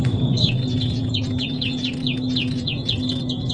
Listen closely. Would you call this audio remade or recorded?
recorded